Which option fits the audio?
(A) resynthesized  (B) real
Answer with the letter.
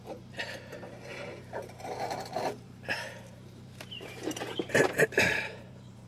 A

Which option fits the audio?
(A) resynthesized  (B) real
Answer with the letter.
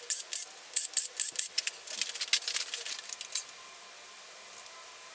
B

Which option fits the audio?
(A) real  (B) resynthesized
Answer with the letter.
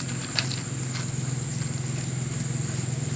A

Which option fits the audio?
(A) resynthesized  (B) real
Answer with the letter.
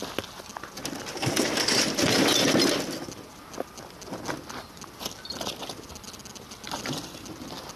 B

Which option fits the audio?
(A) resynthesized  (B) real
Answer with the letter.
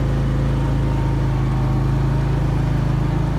B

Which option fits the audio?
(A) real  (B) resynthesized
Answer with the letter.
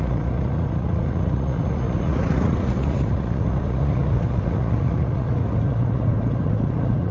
B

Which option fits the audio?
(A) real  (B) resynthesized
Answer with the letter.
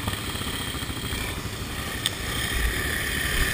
A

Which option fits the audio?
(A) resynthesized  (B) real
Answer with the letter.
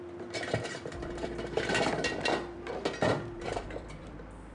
A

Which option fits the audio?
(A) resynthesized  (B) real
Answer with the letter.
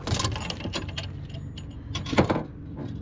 B